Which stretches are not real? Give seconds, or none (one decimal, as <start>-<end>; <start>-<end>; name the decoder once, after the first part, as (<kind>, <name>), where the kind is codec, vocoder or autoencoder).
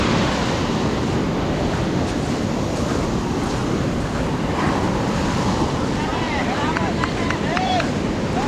3.6-4.8 (vocoder, BigVGAN v2); 6.1-7.7